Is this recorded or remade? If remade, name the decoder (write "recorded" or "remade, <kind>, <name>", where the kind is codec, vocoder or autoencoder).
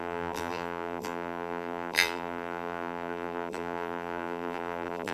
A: remade, vocoder, BigVGAN v2